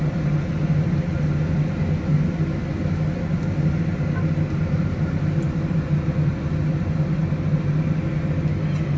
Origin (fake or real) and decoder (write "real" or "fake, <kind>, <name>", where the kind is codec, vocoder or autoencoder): real